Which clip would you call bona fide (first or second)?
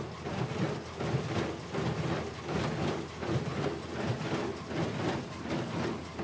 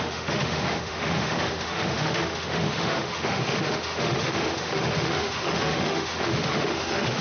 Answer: first